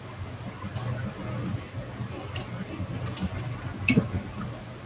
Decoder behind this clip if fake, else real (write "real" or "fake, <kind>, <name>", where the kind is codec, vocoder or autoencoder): real